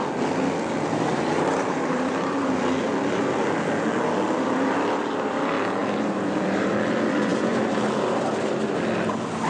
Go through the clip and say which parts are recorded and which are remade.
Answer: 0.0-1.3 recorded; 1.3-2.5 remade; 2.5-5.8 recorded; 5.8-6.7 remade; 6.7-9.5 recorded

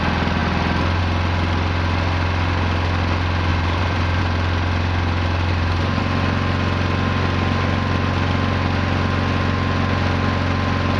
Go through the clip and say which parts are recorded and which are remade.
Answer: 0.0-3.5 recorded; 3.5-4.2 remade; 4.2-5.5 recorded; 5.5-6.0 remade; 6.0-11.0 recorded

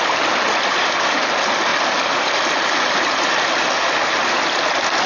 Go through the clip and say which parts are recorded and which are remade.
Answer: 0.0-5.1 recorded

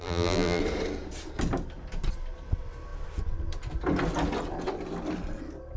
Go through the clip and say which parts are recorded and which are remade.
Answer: 0.0-0.6 remade; 0.6-5.8 recorded

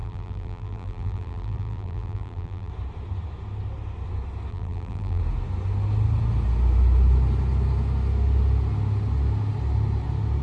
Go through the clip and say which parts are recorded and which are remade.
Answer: 0.0-2.7 remade; 2.7-4.5 recorded; 4.5-5.2 remade; 5.2-10.4 recorded

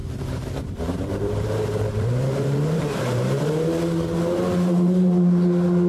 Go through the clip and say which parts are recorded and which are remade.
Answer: 0.0-3.4 remade; 3.4-5.9 recorded